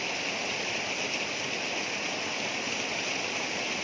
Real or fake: real